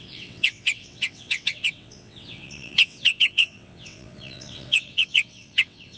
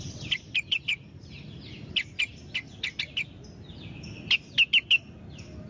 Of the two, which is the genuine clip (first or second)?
second